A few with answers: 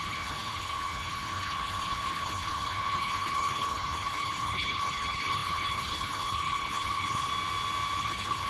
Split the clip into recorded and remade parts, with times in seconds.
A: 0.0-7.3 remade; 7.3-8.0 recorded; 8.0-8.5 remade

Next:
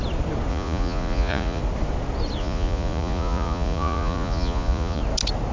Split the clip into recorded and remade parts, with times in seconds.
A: 0.0-0.5 recorded; 0.5-1.6 remade; 1.6-2.4 recorded; 2.4-5.0 remade; 5.0-5.5 recorded

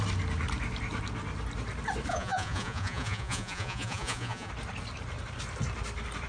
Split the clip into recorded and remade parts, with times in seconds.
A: 0.0-2.1 recorded; 2.1-4.5 remade; 4.5-6.3 recorded

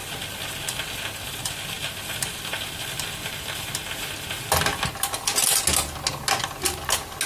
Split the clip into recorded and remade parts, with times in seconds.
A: 0.0-3.3 remade; 3.3-7.3 recorded

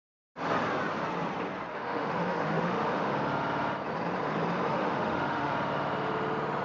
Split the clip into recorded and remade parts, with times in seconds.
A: 0.0-1.7 recorded; 1.7-3.1 remade; 3.1-4.7 recorded; 4.7-5.5 remade; 5.5-6.6 recorded

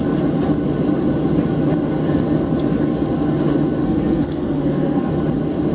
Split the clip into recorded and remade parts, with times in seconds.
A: 0.0-3.8 recorded; 3.8-5.1 remade; 5.1-5.7 recorded

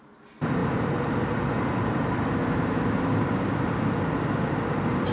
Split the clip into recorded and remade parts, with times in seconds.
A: 0.0-0.6 recorded; 0.6-2.4 remade; 2.4-5.1 recorded

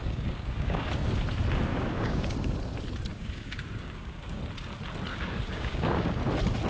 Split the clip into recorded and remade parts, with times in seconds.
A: 0.0-0.9 remade; 0.9-1.7 recorded; 1.7-2.6 remade; 2.6-3.1 recorded; 3.1-4.4 remade; 4.4-5.1 recorded; 5.1-6.2 remade; 6.2-6.7 recorded